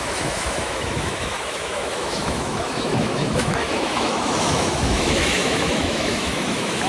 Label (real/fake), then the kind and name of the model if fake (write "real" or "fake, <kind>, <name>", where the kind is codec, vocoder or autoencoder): fake, autoencoder, DAC-VAE